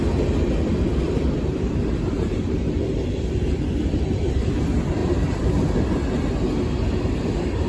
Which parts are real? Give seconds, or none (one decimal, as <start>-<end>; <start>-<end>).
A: 4.6-7.7